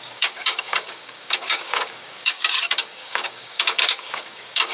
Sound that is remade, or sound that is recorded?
remade